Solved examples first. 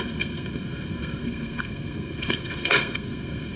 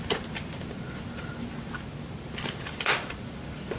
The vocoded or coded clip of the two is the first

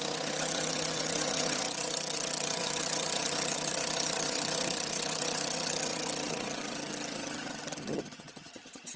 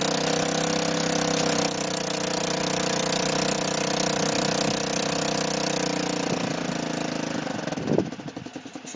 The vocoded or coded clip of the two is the first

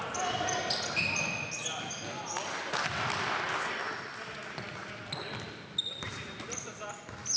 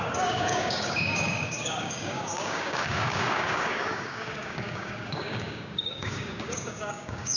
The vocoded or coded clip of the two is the second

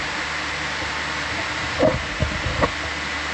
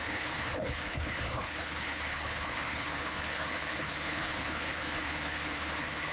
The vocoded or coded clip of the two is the second